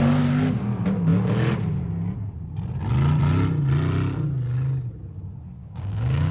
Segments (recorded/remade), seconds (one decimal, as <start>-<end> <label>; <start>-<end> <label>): 0.0-5.6 recorded; 5.6-6.3 remade